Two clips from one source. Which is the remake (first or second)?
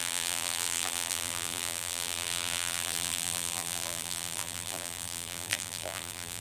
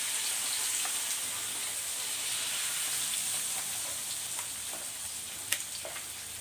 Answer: first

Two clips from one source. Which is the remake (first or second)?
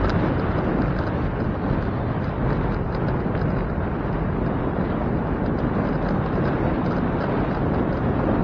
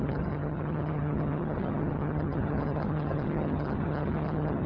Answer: second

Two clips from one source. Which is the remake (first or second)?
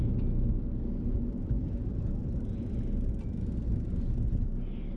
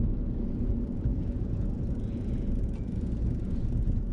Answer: second